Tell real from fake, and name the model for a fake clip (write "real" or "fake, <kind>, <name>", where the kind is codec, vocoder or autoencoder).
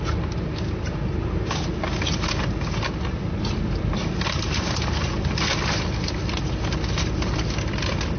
real